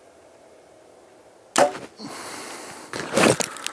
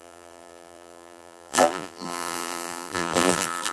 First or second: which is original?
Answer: first